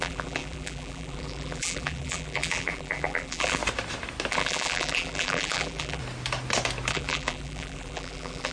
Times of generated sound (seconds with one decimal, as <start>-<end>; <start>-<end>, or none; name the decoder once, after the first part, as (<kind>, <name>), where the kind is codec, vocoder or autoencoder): 0.0-3.6 (vocoder, BigVGAN v2); 4.3-6.0; 6.9-8.5